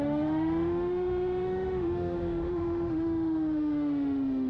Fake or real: fake